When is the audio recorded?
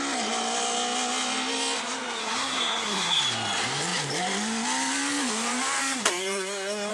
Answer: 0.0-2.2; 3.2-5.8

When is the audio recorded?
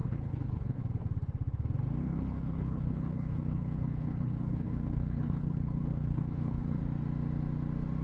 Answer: 0.8-2.0; 6.8-8.0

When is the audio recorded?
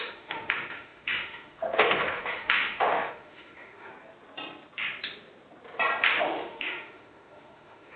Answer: 3.9-6.2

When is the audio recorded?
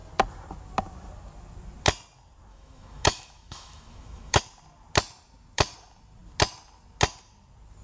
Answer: 0.0-2.5; 4.4-7.8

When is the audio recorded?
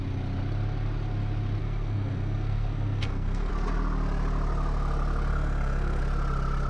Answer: 0.0-1.6; 3.5-5.3; 6.0-6.7